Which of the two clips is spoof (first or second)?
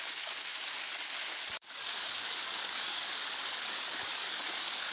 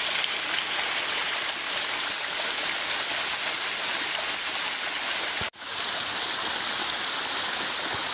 first